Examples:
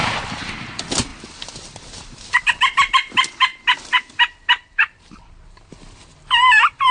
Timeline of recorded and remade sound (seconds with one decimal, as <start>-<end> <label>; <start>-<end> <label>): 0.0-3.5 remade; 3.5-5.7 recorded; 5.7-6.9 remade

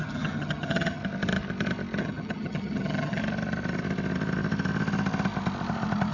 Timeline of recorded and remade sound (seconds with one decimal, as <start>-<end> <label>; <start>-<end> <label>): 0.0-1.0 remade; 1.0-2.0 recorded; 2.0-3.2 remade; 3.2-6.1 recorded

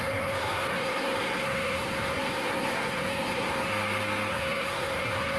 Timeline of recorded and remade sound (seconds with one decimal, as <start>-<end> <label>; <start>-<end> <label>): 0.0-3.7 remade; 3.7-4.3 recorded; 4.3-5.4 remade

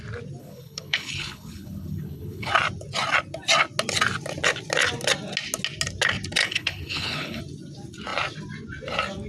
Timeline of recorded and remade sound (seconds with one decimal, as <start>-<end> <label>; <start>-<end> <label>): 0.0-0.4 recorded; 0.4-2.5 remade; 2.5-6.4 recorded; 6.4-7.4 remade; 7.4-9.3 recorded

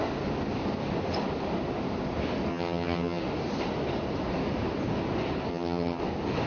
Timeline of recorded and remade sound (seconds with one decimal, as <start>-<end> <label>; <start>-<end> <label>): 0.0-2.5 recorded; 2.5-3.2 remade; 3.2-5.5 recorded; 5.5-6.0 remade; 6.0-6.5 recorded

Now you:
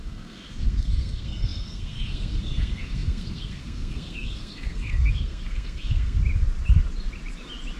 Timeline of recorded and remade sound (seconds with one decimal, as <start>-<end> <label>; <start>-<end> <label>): 0.0-6.2 remade; 6.2-7.8 recorded